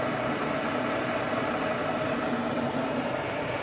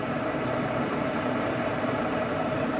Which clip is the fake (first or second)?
second